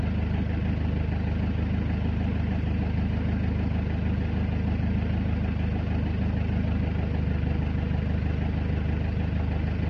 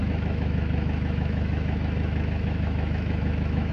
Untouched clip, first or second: first